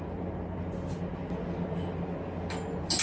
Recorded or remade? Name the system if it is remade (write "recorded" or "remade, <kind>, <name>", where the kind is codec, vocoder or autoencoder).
recorded